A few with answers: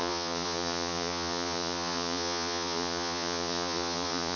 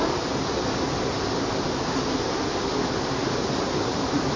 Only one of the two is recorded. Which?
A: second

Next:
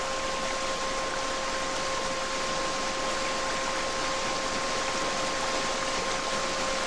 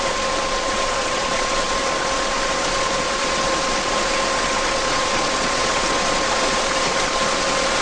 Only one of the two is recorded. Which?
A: first